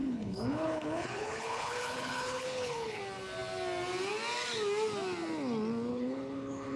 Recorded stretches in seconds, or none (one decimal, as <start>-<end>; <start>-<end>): 3.0-5.9